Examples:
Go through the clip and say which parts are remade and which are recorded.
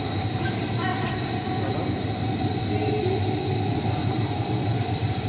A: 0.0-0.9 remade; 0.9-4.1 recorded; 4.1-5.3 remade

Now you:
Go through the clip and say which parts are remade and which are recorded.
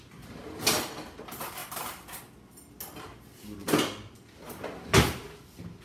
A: 0.0-1.6 recorded; 1.6-2.2 remade; 2.2-5.8 recorded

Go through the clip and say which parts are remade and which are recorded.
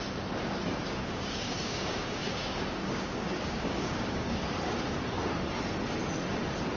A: 0.0-0.8 recorded; 0.8-4.4 remade; 4.4-6.8 recorded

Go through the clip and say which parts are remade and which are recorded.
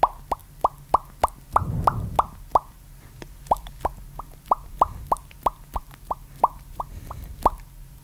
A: 0.0-8.0 recorded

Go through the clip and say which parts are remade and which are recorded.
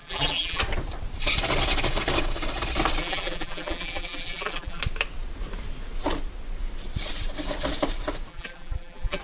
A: 0.0-0.6 remade; 0.6-3.0 recorded; 3.0-4.8 remade; 4.8-8.3 recorded; 8.3-9.2 remade